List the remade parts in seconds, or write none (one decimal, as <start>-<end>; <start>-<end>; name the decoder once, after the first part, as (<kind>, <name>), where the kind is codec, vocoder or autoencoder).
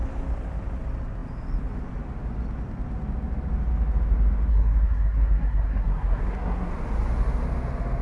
4.5-6.7 (codec, SNAC)